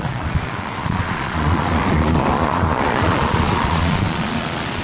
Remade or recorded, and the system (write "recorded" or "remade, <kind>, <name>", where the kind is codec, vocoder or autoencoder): remade, vocoder, Vocos